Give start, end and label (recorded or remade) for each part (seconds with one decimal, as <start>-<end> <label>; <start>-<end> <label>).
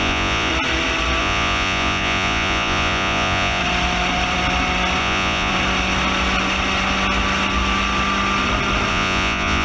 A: 0.0-0.5 remade; 0.5-1.2 recorded; 1.2-3.6 remade; 3.6-5.0 recorded; 5.0-5.5 remade; 5.5-8.9 recorded; 8.9-9.6 remade